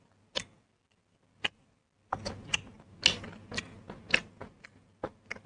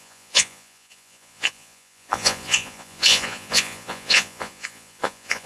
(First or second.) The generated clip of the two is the second